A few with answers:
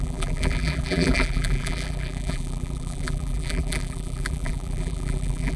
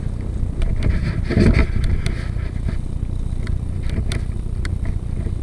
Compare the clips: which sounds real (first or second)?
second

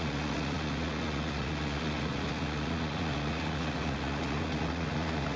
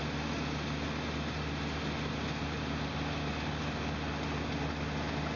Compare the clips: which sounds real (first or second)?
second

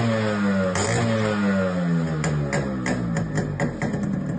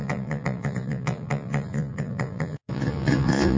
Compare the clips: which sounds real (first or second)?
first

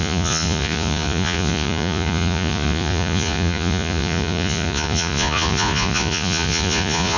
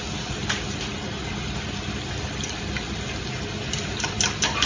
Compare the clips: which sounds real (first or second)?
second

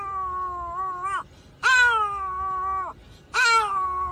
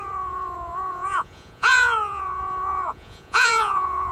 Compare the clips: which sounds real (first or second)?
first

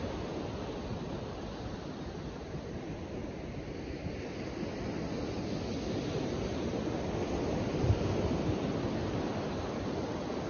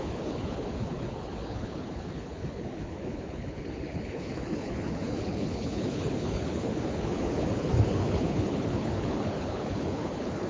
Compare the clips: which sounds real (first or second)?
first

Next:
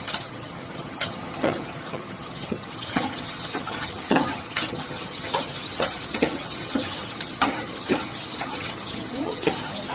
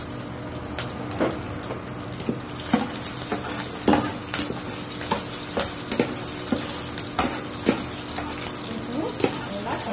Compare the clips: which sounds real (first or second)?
second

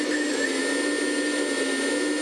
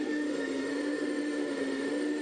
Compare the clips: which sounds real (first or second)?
first